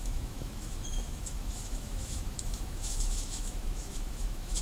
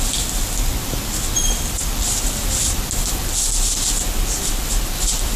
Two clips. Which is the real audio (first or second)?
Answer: second